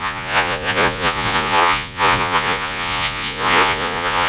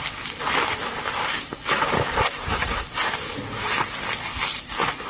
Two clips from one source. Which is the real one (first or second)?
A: second